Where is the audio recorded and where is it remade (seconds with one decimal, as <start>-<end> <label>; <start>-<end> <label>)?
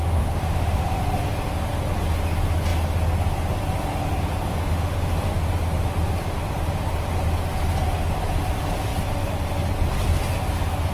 0.0-1.0 remade; 1.0-4.5 recorded; 4.5-5.1 remade; 5.1-10.9 recorded